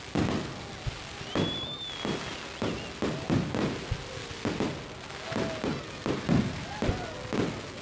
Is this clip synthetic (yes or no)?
no